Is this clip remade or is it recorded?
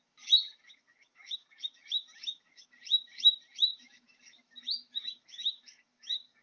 remade